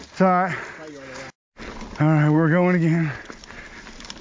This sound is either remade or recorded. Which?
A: recorded